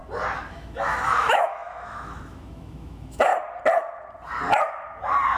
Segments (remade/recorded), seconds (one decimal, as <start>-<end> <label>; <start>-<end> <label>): 0.0-0.5 recorded; 0.5-3.3 remade; 3.3-5.4 recorded